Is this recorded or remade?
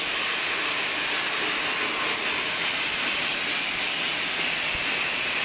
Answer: recorded